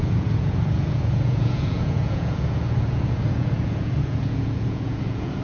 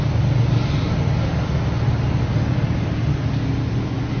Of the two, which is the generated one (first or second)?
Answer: first